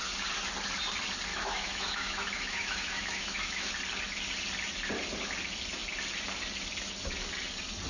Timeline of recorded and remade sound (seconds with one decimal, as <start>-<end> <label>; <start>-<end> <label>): 0.0-1.3 recorded; 1.3-3.7 remade; 3.7-7.9 recorded